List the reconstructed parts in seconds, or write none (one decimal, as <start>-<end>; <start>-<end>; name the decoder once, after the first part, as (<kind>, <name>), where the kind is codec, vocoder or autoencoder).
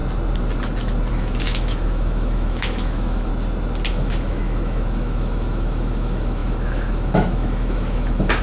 1.1-3.3 (autoencoder, DAC-VAE); 3.9-8.4